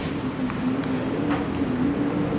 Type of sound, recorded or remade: recorded